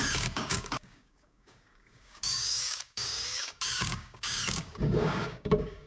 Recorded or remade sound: remade